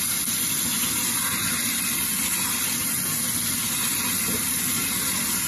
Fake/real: real